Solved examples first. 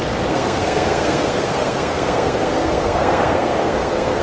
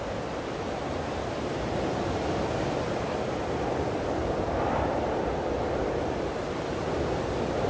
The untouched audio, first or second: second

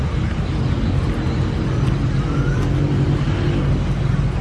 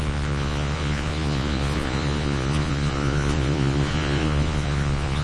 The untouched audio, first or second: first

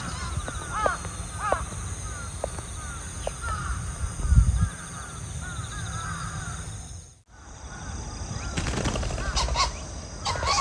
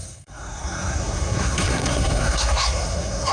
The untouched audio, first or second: first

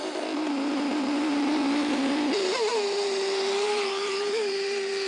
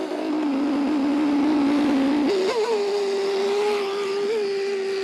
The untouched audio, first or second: second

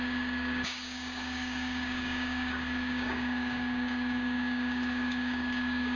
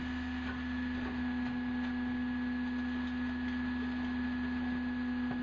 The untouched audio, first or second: second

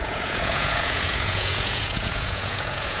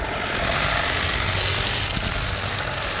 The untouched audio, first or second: second